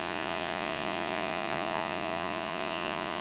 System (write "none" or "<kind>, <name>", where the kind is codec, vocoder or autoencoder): vocoder, Vocos